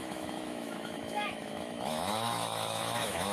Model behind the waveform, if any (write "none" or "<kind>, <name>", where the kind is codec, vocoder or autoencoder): autoencoder, DAC-VAE